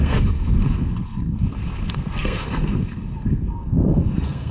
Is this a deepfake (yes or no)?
yes